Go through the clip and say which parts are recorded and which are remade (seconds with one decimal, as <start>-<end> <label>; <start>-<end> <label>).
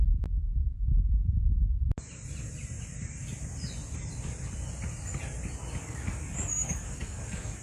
0.0-5.8 recorded; 5.8-7.6 remade